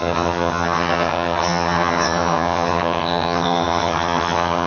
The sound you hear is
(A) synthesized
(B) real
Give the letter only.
A